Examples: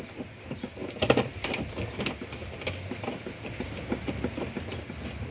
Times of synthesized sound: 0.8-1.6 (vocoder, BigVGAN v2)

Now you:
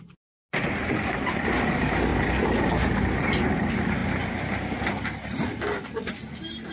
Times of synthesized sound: none

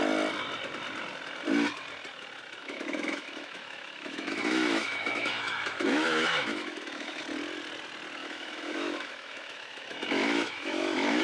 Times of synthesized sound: 2.6-7.2 (autoencoder, DAC-VAE); 8.2-11.2

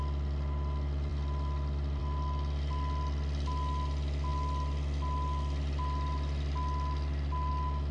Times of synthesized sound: 1.1-2.0 (vocoder, BigVGAN v2)

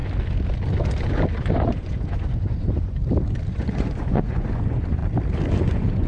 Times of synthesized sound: 1.5-3.0 (vocoder, Vocos); 3.5-5.0; 5.6-6.1

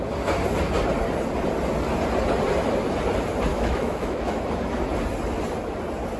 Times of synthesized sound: 3.5-4.4 (autoencoder, DAC-VAE)